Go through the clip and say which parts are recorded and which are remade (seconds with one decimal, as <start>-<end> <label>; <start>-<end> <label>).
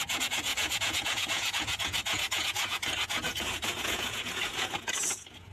0.0-5.5 remade